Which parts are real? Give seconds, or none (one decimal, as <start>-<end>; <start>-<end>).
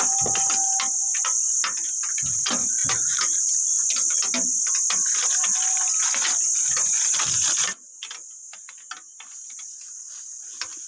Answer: 0.0-2.8; 4.2-10.9